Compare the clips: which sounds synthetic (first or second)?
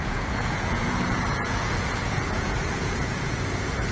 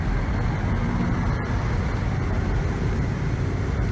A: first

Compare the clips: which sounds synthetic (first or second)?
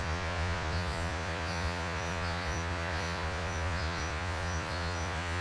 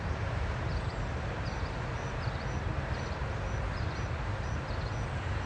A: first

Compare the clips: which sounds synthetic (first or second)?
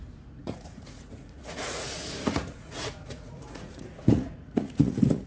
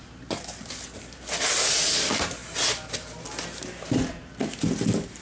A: first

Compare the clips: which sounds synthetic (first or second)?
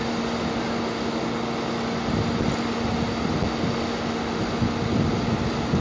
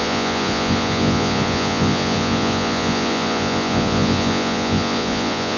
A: second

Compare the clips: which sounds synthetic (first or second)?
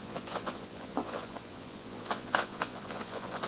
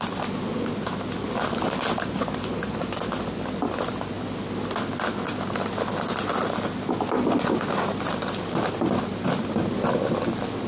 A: first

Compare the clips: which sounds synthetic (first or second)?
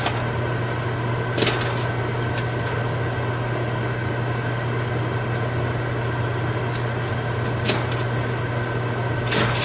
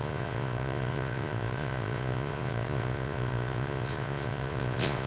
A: second